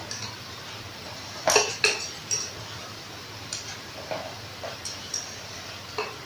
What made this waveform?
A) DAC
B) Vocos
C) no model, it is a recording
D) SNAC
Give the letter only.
C